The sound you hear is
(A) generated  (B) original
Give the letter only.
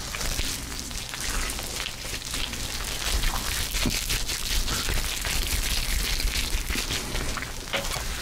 B